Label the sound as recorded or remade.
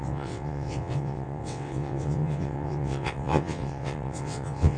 remade